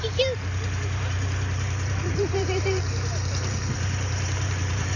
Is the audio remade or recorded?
remade